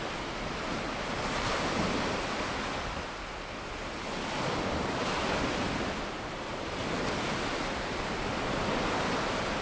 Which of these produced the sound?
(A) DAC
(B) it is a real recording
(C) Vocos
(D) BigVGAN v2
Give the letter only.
B